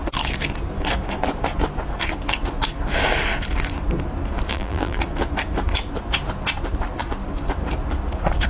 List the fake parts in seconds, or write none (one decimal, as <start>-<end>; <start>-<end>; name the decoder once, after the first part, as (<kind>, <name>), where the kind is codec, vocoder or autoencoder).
4.5-5.0 (vocoder, BigVGAN v2)